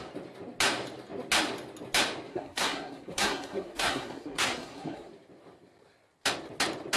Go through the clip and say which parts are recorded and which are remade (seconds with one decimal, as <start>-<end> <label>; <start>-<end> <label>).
0.0-2.3 recorded; 2.3-5.1 remade; 5.1-7.0 recorded